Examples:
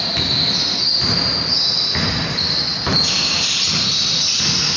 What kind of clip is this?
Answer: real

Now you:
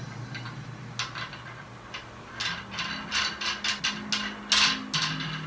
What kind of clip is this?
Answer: real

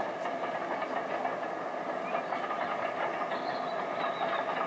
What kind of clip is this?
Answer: real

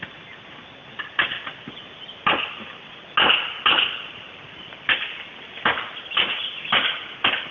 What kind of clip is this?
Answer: real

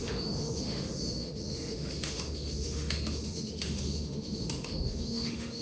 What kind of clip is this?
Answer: fake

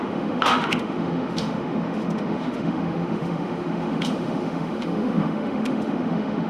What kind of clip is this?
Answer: fake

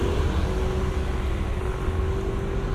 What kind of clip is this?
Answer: real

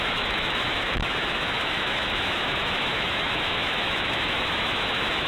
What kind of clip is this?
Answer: fake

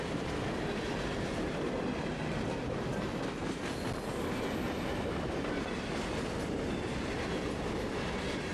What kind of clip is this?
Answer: real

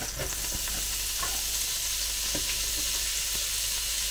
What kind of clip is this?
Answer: real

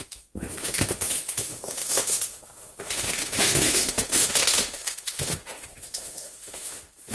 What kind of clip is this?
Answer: fake